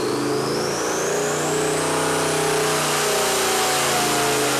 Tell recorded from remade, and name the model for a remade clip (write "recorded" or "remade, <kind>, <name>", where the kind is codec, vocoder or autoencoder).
recorded